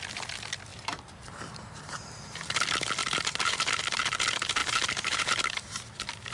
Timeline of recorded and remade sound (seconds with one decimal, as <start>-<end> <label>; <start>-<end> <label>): 0.0-0.7 recorded; 0.7-2.4 remade; 2.4-3.0 recorded; 3.0-3.8 remade; 3.8-4.6 recorded; 4.6-5.3 remade; 5.3-6.3 recorded